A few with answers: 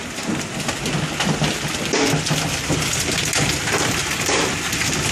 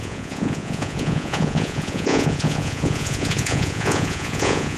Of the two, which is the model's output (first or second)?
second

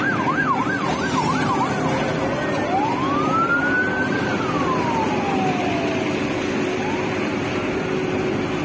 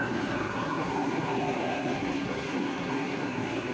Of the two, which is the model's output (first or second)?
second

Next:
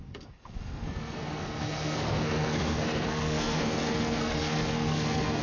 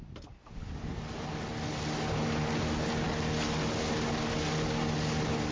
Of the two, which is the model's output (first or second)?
first